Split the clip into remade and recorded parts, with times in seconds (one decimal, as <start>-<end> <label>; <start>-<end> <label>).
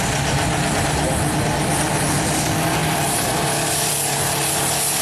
0.0-2.8 recorded; 2.8-3.9 remade; 3.9-5.0 recorded